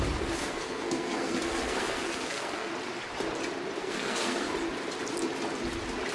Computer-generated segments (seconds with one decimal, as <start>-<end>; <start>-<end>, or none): 0.4-2.7; 3.8-4.5